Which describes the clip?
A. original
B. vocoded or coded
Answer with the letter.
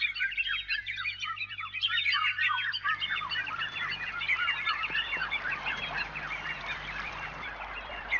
B